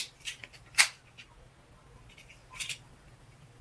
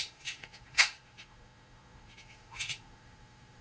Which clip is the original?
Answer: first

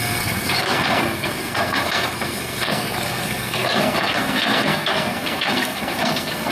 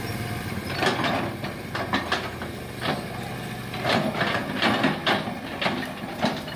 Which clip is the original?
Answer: second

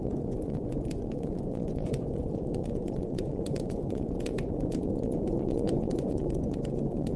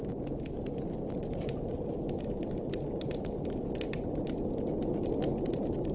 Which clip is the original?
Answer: second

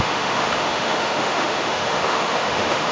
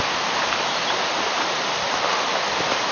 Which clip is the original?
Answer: second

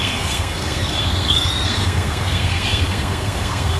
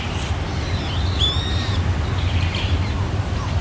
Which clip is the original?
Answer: second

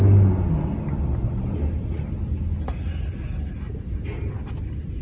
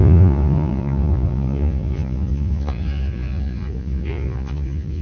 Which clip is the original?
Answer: first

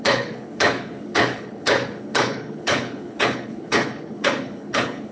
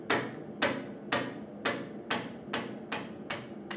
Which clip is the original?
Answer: second